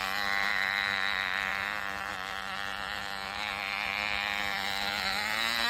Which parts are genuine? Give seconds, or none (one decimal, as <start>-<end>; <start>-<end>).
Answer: 0.0-0.5; 1.5-2.1; 3.0-5.7